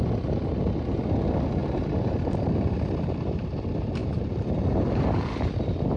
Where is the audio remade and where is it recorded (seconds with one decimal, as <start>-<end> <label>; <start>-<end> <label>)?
0.0-1.6 recorded; 1.6-3.1 remade; 3.1-4.0 recorded; 4.0-5.2 remade; 5.2-6.0 recorded